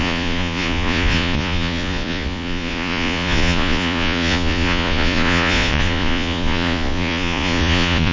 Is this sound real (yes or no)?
no